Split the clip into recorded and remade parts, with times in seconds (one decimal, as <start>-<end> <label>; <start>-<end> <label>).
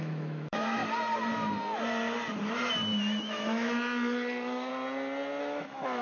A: 0.0-0.8 remade; 0.8-3.2 recorded; 3.2-4.7 remade; 4.7-5.4 recorded; 5.4-6.0 remade